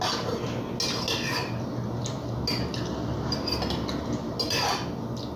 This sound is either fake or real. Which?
real